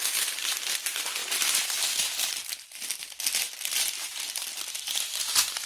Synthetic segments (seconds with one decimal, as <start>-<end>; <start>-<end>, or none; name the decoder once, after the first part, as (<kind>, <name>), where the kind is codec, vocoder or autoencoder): none